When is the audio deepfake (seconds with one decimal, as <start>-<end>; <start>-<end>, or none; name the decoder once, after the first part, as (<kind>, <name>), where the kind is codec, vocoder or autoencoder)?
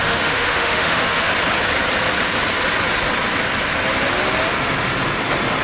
0.0-1.3 (autoencoder, DAC-VAE)